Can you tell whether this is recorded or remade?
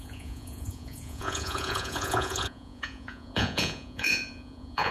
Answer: remade